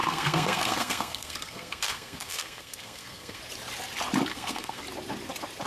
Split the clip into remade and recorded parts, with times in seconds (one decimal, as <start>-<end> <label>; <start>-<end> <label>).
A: 0.0-3.4 remade; 3.4-4.3 recorded; 4.3-4.8 remade; 4.8-5.7 recorded